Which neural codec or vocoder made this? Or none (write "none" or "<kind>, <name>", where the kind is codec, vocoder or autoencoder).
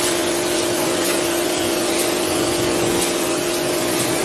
vocoder, Vocos